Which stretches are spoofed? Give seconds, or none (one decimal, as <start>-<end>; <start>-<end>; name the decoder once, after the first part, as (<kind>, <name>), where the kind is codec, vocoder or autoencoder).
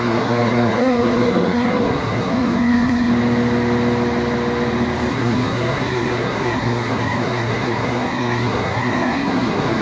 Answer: 0.0-3.1 (codec, SNAC); 5.1-9.8